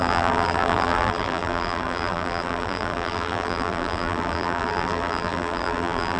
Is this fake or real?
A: fake